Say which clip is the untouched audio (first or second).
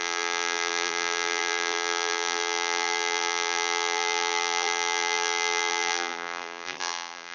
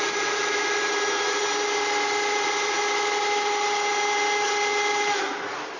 second